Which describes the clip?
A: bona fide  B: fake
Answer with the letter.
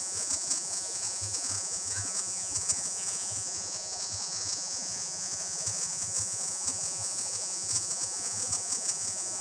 B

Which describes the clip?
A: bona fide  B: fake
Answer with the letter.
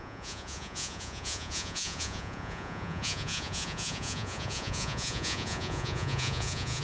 B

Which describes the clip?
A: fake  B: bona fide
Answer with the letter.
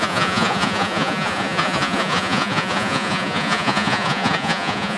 A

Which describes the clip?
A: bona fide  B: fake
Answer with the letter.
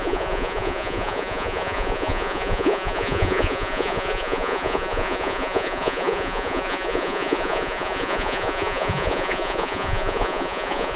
B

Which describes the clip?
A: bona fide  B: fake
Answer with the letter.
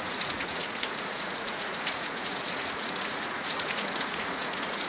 B